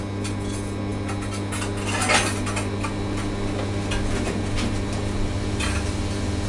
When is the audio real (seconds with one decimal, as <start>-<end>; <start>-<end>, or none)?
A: 0.0-6.5